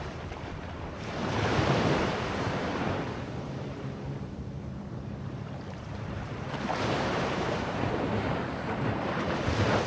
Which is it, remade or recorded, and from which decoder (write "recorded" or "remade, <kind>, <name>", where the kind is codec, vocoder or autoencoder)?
remade, vocoder, BigVGAN v2